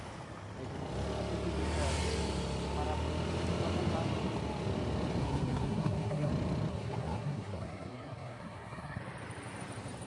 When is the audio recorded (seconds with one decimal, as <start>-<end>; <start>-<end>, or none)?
0.0-5.2; 6.3-6.7; 9.0-10.1